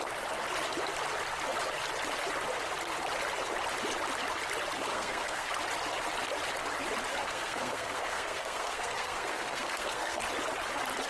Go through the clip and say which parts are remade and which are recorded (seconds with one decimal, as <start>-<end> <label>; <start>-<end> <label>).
0.0-4.9 recorded; 4.9-5.5 remade; 5.5-7.1 recorded; 7.1-10.2 remade; 10.2-11.1 recorded